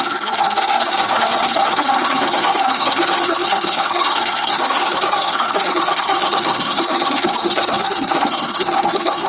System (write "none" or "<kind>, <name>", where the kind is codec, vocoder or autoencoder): codec, SNAC